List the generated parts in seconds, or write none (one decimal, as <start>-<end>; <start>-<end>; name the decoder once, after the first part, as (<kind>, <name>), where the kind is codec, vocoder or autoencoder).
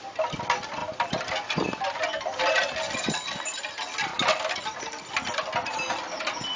none